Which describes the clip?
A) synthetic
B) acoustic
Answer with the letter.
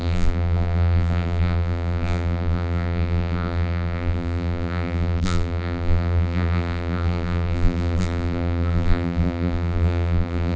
A